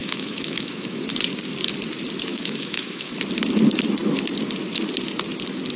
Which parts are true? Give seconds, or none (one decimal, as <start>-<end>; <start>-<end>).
1.0-2.3; 3.1-5.8